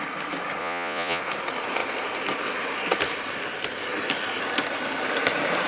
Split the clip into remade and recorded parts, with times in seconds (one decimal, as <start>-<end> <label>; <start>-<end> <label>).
0.0-0.6 recorded; 0.6-1.2 remade; 1.2-5.7 recorded